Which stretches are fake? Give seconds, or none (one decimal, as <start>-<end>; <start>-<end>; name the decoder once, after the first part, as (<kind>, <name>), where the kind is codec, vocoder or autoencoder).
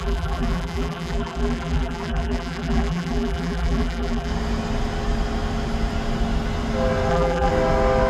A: 0.0-4.3 (vocoder, BigVGAN v2); 7.1-7.5